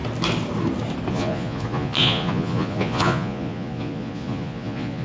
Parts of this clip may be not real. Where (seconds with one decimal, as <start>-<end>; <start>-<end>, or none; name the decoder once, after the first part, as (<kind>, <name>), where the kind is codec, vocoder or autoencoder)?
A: 1.1-5.0 (vocoder, Vocos)